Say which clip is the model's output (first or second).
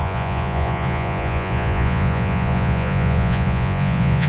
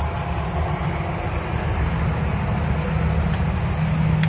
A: first